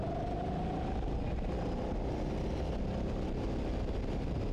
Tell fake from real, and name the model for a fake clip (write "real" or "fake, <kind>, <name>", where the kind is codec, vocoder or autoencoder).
real